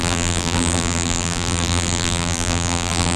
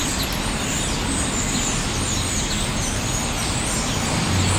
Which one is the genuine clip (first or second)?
second